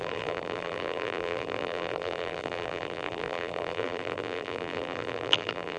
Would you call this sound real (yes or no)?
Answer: no